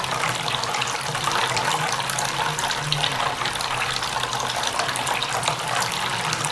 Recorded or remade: recorded